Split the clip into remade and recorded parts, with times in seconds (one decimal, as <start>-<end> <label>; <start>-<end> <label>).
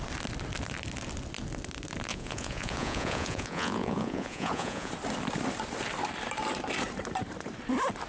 0.0-2.1 recorded; 2.1-4.9 remade; 4.9-8.1 recorded